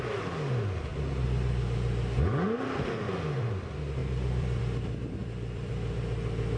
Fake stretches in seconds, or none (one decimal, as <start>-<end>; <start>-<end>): 0.9-3.5; 4.0-4.6; 5.2-5.7